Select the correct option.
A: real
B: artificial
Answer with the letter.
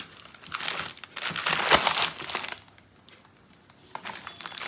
A